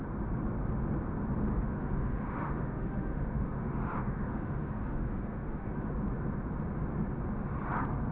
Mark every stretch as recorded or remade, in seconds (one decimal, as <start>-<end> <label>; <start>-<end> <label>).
0.0-1.5 recorded; 1.5-5.9 remade; 5.9-8.1 recorded